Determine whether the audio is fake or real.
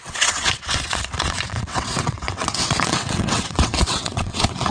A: fake